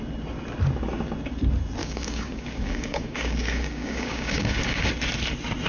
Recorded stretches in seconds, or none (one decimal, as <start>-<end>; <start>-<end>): 0.0-1.8; 4.9-5.7